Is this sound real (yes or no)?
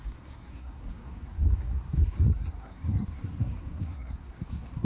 no